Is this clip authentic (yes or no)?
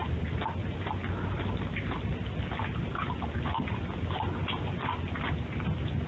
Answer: yes